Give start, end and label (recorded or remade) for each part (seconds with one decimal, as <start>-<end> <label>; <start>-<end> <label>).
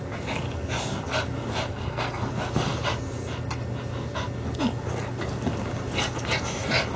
0.0-1.7 recorded; 1.7-2.3 remade; 2.3-7.0 recorded